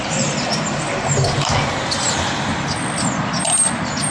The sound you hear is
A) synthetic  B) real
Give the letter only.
B